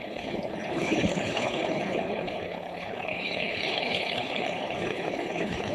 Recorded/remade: remade